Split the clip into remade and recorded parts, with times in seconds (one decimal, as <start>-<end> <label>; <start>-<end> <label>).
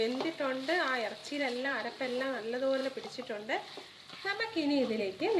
0.0-1.2 recorded; 1.2-2.4 remade; 2.4-5.4 recorded